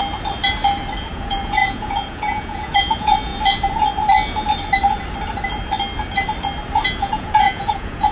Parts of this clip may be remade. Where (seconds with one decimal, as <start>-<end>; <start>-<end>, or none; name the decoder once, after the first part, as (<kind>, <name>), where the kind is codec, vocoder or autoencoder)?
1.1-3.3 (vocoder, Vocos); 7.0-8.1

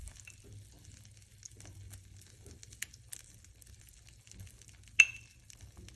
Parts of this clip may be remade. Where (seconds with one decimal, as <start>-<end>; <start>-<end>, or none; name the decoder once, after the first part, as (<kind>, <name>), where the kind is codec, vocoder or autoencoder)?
none

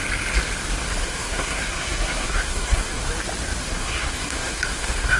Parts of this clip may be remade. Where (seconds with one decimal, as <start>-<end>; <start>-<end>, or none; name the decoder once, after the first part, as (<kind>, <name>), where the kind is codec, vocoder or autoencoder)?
1.0-3.0 (codec, SNAC); 3.6-5.2

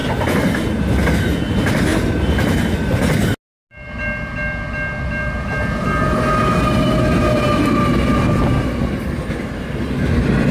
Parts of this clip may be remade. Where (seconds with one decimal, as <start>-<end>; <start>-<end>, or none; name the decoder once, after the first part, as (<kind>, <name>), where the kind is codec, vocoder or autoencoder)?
none

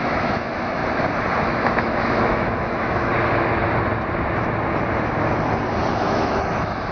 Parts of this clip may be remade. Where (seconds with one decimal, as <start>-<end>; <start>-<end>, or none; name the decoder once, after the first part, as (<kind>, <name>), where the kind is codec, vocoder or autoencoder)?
0.0-0.8 (autoencoder, DAC-VAE); 1.4-3.1; 5.9-6.9

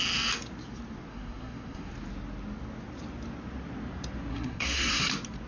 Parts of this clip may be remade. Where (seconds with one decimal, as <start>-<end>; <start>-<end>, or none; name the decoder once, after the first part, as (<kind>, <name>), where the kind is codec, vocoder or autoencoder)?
1.1-1.9 (codec, SNAC); 4.3-5.0